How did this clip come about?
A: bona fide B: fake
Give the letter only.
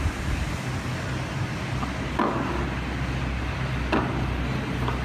A